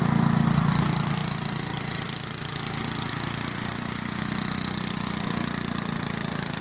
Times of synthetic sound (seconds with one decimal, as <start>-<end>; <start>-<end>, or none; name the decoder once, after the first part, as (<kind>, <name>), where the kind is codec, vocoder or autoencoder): none